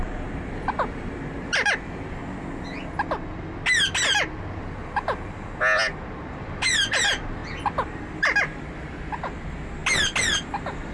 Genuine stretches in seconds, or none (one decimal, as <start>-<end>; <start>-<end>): 2.2-6.3

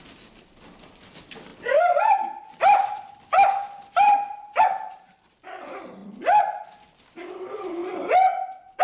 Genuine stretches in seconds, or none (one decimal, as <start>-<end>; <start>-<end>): 7.8-8.8

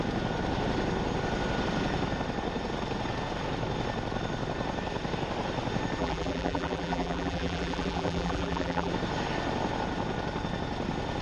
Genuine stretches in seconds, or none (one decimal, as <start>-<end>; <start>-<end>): 0.0-6.0; 8.9-11.2

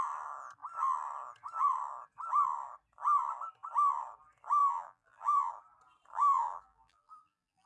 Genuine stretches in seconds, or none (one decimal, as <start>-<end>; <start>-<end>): 0.0-4.6; 5.5-6.1